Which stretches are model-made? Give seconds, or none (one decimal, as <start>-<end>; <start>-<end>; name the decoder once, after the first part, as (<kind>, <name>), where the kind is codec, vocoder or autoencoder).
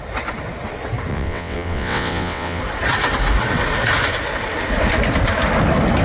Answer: 1.1-2.6 (vocoder, WaveNeXt)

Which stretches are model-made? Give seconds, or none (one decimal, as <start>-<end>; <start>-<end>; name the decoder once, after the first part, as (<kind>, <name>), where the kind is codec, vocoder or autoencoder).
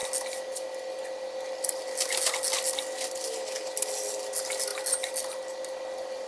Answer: none